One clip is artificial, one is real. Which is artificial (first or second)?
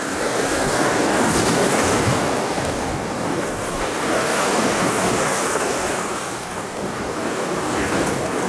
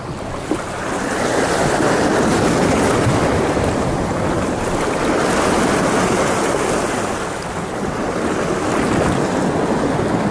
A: first